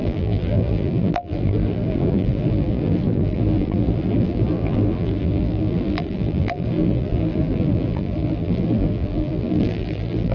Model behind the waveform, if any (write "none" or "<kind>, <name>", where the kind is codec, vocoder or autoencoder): vocoder, BigVGAN v2